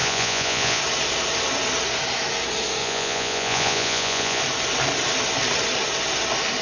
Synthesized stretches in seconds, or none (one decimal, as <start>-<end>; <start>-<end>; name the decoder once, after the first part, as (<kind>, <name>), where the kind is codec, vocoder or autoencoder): 0.0-0.8 (vocoder, Vocos); 2.8-4.4